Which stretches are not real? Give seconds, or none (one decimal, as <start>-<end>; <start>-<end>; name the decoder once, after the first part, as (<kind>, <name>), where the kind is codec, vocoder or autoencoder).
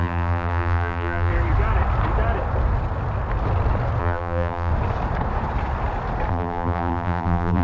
0.0-1.3 (vocoder, BigVGAN v2); 4.0-4.7; 6.3-7.6